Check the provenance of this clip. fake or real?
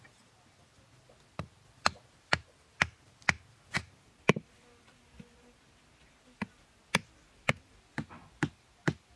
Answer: real